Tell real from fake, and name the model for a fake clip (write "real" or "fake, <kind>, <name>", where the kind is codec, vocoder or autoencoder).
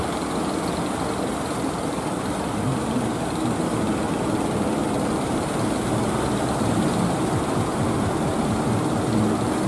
real